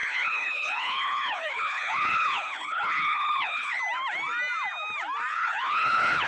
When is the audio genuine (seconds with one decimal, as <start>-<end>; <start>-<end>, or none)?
3.8-5.3